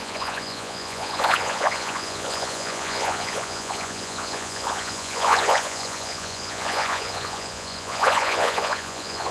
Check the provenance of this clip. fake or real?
fake